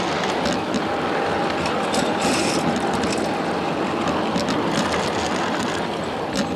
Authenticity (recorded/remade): recorded